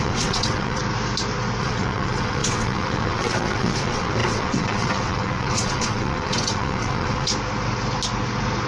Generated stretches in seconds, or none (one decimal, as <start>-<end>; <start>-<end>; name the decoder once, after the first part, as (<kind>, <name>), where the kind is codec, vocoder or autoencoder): 0.0-0.8 (vocoder, WaveNeXt); 1.6-7.3